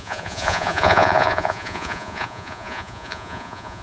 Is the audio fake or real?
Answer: fake